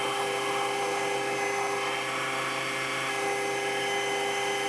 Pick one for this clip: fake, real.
real